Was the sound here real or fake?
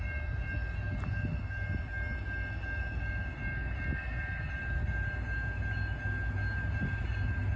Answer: real